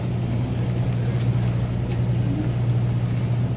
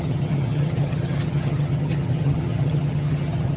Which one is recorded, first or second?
first